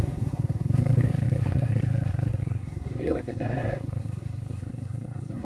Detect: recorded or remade remade